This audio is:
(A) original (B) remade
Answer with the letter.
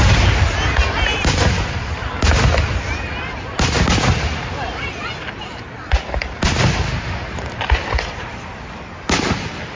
A